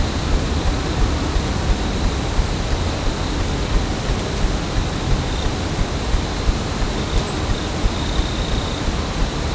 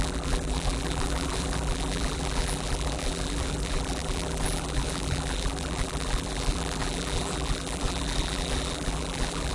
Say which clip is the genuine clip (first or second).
first